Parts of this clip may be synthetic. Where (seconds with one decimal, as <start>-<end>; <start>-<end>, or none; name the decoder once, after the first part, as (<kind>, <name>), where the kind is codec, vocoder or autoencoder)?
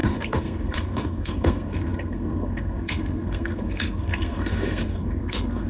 0.0-5.7 (codec, SNAC)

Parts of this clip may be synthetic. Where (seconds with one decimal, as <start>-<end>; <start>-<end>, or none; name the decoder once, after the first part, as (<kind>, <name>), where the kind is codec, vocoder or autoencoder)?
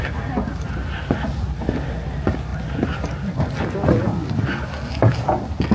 none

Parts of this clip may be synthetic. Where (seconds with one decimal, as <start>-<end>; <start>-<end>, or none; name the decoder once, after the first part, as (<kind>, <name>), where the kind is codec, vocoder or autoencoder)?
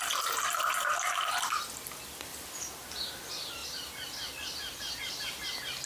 none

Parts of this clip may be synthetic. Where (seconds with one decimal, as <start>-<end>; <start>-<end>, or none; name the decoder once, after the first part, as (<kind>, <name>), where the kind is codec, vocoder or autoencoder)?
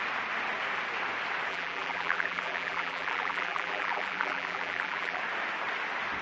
1.5-5.2 (vocoder, BigVGAN v2)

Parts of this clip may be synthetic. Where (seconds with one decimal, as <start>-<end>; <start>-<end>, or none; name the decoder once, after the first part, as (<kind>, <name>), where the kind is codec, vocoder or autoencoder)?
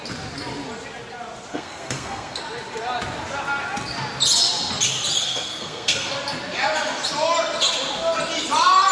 1.5-2.4 (codec, SNAC); 5.2-6.1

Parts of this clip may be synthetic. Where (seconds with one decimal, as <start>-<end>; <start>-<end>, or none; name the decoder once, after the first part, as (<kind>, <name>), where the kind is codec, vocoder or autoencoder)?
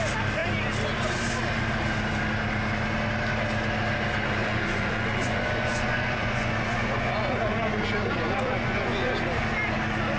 4.4-9.1 (vocoder, Vocos)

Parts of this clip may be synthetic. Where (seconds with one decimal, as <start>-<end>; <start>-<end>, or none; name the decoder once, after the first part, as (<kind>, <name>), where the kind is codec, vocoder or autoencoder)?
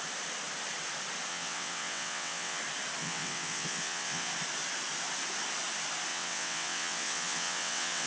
1.3-2.6 (vocoder, WaveNeXt); 3.0-4.3; 6.1-8.1